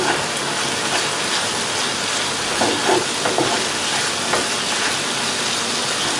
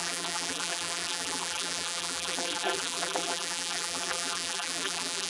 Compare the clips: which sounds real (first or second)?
first